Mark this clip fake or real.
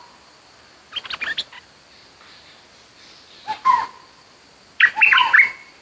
real